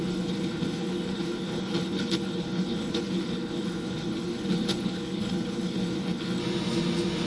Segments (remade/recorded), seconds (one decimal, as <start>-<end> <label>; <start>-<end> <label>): 0.0-6.4 remade; 6.4-7.3 recorded